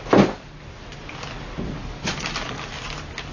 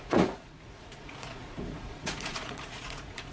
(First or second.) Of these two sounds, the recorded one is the first